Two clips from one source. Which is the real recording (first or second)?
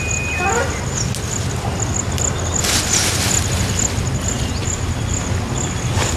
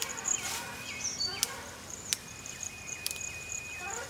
first